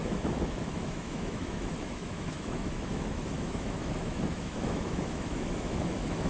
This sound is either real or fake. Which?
fake